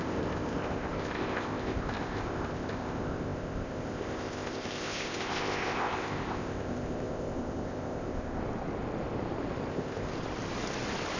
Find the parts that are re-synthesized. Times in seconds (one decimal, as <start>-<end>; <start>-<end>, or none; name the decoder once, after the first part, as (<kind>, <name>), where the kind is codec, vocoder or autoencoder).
0.0-8.4 (codec, ZipCodec); 9.7-10.1